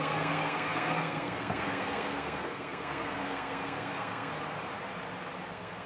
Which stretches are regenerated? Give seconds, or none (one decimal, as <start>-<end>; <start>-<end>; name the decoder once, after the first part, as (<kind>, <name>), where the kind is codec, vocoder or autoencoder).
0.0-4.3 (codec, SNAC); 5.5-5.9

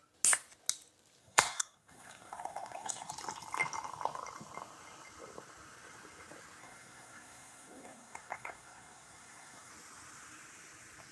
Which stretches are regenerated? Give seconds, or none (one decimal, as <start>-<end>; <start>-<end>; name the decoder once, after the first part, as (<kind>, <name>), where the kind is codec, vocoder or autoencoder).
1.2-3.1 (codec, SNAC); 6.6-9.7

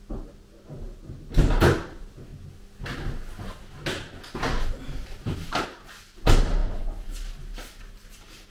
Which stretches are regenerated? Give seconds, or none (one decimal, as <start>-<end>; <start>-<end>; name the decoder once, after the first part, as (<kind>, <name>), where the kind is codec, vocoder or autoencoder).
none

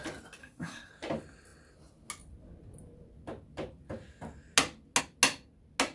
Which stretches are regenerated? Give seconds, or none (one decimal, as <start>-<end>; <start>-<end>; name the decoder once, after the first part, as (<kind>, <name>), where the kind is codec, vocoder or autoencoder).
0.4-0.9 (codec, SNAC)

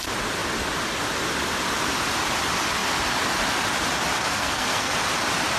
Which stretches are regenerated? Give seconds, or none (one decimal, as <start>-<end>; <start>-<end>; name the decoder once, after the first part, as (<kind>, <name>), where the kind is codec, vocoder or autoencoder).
4.2-4.9 (codec, SNAC)

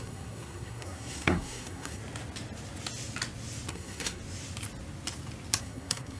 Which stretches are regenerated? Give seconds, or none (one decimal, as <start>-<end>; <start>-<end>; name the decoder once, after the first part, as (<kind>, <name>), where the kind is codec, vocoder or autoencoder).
0.0-2.0 (codec, SNAC); 3.7-4.2; 5.6-6.2